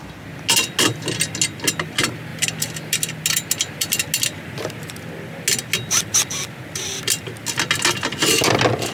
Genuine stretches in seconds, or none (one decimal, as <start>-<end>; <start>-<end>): 0.0-8.9